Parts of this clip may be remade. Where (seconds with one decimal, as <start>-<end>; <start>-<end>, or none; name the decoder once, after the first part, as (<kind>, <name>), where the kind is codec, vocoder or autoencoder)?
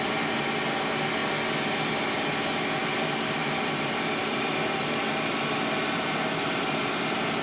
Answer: 2.8-5.8 (vocoder, BigVGAN v2)